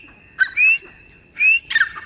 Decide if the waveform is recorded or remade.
recorded